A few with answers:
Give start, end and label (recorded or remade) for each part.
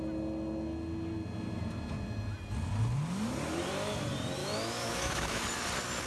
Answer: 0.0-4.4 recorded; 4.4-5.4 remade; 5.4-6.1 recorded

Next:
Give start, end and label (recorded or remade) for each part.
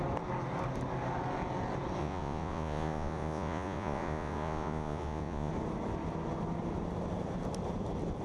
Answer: 0.0-2.0 recorded; 2.0-5.5 remade; 5.5-8.2 recorded